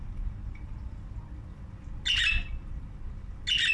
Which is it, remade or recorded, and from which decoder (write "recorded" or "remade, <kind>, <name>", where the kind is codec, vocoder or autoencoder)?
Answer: recorded